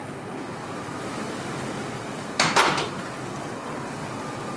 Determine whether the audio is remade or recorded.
recorded